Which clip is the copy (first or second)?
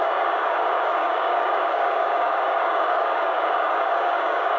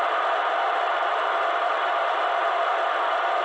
first